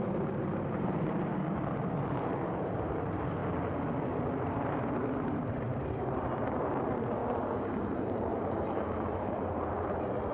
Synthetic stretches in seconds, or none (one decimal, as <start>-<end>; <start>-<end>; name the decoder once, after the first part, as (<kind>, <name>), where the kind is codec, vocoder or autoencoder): 0.0-1.3 (vocoder, BigVGAN v2); 2.2-3.4; 4.1-10.3